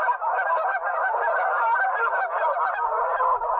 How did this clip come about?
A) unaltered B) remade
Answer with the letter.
B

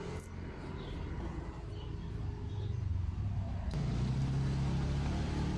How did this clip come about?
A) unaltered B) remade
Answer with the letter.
A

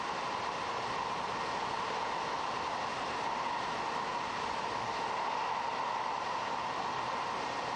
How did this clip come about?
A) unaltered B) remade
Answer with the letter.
B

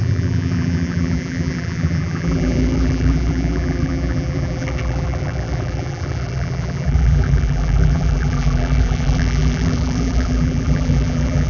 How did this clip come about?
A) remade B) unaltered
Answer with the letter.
A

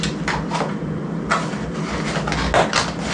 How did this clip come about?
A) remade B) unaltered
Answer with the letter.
B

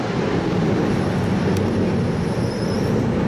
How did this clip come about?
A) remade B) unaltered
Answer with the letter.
B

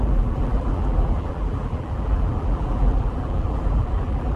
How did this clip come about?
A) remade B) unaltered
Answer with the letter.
A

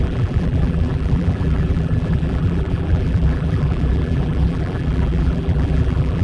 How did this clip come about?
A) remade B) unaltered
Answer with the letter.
A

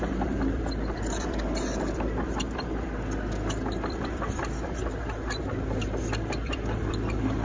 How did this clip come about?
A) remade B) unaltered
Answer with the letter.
A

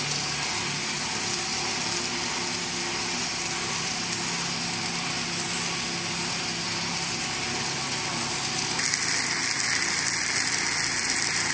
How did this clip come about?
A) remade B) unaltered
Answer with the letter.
B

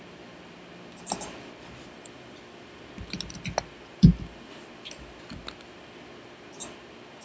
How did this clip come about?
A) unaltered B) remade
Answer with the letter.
A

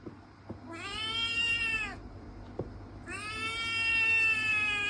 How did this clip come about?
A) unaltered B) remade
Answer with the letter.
A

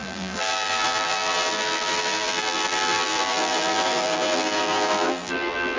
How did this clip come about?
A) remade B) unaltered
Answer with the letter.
A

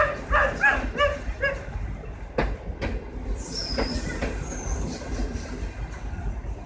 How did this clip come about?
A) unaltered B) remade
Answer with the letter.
A